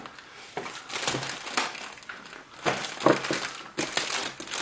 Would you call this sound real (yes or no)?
yes